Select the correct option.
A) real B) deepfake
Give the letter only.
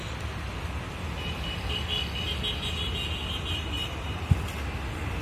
A